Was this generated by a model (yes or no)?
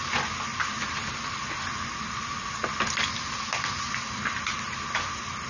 no